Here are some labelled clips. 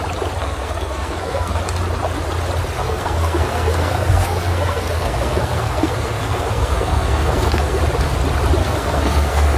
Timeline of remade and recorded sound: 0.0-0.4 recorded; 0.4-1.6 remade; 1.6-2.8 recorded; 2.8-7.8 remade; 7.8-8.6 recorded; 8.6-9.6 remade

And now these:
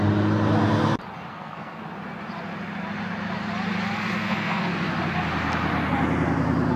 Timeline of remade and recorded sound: 0.0-1.3 recorded; 1.3-1.8 remade; 1.8-4.2 recorded; 4.2-4.7 remade; 4.7-6.8 recorded

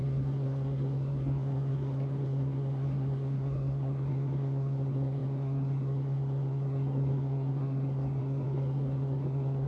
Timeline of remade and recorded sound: 0.0-9.7 remade

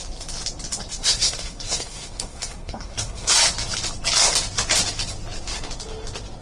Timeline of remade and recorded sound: 0.0-0.9 recorded; 0.9-3.3 remade; 3.3-6.4 recorded

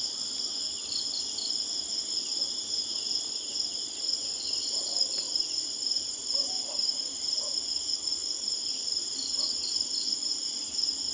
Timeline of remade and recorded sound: 0.0-11.1 recorded

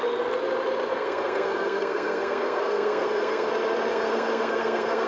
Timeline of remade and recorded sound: 0.0-0.9 recorded; 0.9-3.5 remade; 3.5-3.9 recorded; 3.9-5.1 remade

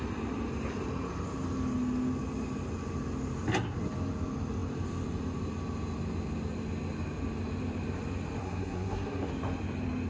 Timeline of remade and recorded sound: 0.0-8.4 recorded; 8.4-9.3 remade; 9.3-10.1 recorded